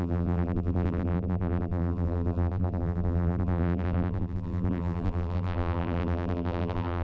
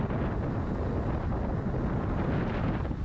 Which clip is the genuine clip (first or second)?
second